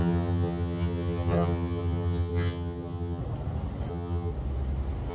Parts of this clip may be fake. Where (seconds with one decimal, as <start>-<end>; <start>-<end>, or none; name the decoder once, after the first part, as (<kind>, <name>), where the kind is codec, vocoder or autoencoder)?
0.0-3.2 (vocoder, HiFi-GAN); 3.9-4.3